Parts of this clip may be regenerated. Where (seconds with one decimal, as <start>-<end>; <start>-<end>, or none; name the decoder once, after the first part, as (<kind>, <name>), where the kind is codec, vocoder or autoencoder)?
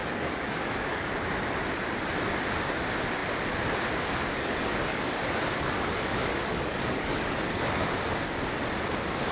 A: 0.0-1.1 (codec, DAC); 4.2-7.6